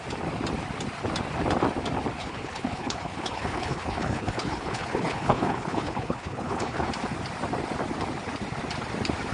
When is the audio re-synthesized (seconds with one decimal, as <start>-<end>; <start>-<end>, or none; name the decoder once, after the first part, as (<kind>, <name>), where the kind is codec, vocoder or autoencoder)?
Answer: 2.2-6.9 (codec, HILCodec)